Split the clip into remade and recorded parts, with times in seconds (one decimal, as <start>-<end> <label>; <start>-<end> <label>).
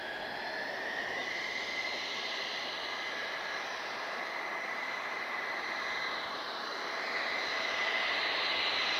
0.0-1.2 recorded; 1.2-6.4 remade; 6.4-9.0 recorded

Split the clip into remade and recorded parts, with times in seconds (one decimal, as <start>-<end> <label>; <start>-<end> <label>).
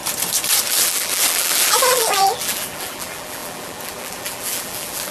0.0-0.7 recorded; 0.7-5.1 remade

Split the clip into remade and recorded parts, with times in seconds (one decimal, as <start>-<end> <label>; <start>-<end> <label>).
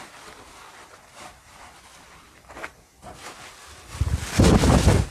0.0-3.9 remade; 3.9-4.4 recorded; 4.4-5.1 remade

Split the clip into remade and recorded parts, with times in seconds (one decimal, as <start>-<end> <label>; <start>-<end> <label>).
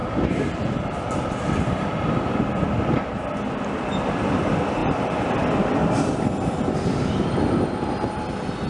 0.0-4.8 recorded; 4.8-8.1 remade; 8.1-8.7 recorded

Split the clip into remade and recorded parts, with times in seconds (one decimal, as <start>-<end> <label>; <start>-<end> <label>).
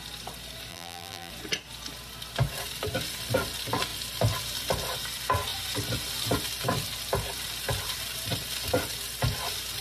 0.0-0.7 recorded; 0.7-1.3 remade; 1.3-9.8 recorded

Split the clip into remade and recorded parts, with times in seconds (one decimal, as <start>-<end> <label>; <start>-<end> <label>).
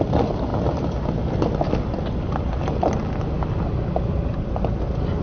0.0-5.2 recorded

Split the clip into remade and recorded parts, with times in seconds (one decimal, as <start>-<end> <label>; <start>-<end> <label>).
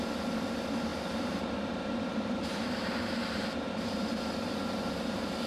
0.0-0.9 recorded; 0.9-4.2 remade; 4.2-5.5 recorded